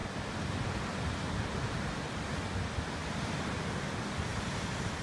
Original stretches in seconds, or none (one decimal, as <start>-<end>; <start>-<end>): 2.0-4.3